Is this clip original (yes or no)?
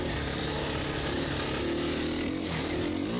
yes